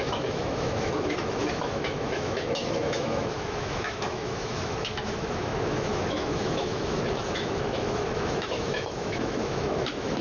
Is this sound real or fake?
fake